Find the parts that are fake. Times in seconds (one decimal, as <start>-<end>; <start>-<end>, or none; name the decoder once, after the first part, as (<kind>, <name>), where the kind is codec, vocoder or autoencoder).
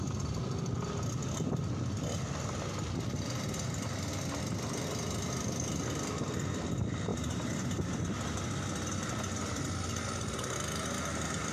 7.1-8.0 (vocoder, BigVGAN v2)